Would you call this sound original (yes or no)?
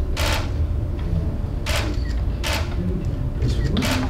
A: yes